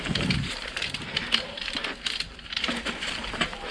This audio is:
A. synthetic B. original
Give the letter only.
A